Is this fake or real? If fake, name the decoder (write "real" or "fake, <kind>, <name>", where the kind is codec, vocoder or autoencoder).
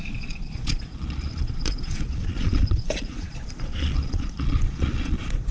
fake, vocoder, Vocos